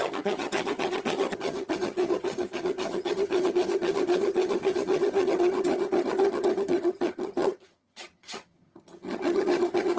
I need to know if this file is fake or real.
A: fake